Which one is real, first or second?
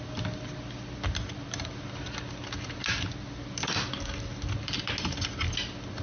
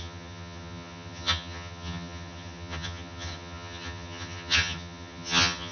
first